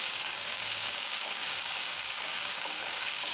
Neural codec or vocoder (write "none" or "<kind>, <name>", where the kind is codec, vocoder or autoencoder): codec, DAC